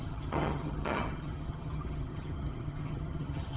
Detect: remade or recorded remade